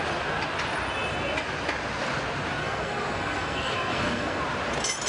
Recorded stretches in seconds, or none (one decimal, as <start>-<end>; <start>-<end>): 0.0-2.6; 4.4-5.1